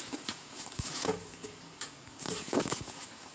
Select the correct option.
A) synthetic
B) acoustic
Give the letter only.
A